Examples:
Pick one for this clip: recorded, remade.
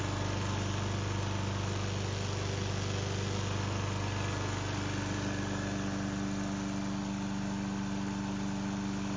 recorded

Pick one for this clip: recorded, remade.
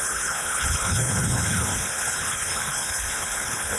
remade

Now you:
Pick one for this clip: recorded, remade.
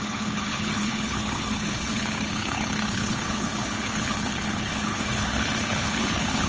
remade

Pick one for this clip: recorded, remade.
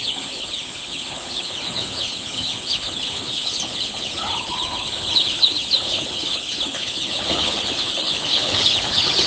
remade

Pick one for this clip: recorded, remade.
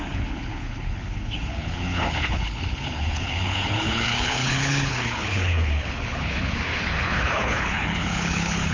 remade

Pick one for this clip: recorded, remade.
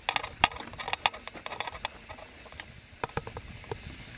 recorded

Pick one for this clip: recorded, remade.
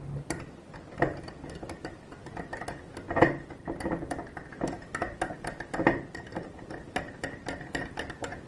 recorded